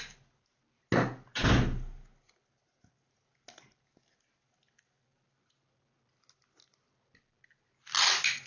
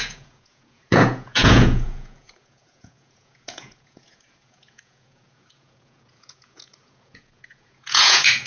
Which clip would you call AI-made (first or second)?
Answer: second